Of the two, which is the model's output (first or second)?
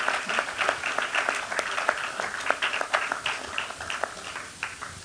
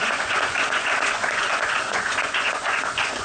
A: second